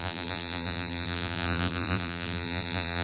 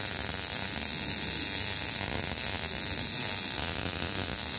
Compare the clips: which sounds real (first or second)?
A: second